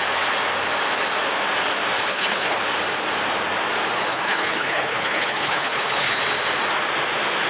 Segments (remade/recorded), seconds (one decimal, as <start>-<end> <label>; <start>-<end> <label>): 0.0-2.1 recorded; 2.1-2.6 remade; 2.6-4.1 recorded; 4.1-6.2 remade; 6.2-7.5 recorded